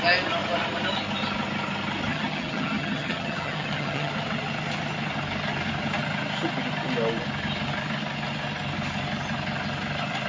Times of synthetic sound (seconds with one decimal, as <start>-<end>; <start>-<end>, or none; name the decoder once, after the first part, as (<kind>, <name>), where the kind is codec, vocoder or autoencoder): 2.1-4.1 (vocoder, HiFi-GAN)